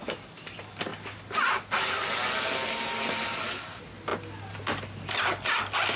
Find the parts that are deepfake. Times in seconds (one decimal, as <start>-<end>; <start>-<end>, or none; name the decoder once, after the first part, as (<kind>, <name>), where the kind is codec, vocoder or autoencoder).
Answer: none